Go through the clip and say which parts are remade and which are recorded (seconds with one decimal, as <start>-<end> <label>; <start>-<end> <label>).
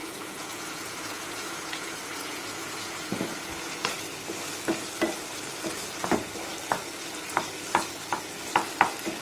0.0-3.9 remade; 3.9-9.2 recorded